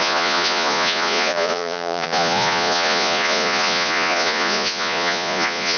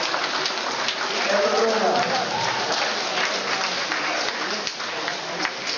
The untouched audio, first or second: second